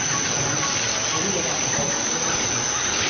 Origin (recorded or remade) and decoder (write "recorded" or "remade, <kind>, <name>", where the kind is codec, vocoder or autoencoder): recorded